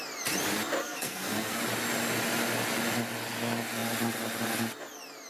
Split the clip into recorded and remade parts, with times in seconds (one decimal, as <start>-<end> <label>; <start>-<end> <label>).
0.0-0.8 recorded; 0.8-1.6 remade; 1.6-5.3 recorded

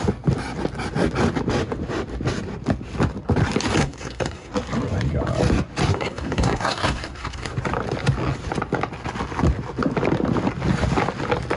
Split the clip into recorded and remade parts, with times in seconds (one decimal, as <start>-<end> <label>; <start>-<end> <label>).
0.0-3.8 recorded; 3.8-4.5 remade; 4.5-5.9 recorded; 5.9-7.5 remade; 7.5-11.6 recorded

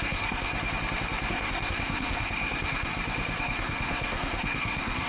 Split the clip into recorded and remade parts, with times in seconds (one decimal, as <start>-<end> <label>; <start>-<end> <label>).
0.0-0.5 remade; 0.5-1.3 recorded; 1.3-2.9 remade; 2.9-3.4 recorded; 3.4-5.1 remade

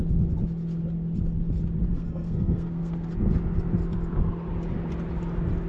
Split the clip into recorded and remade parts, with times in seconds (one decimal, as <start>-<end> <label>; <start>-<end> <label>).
0.0-1.9 recorded; 1.9-3.1 remade; 3.1-5.7 recorded

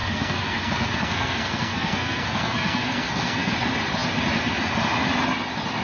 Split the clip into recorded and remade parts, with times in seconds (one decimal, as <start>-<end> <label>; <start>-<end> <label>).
0.0-3.5 remade; 3.5-5.8 recorded